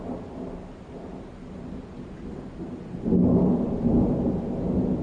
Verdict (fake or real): real